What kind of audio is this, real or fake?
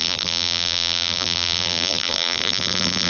fake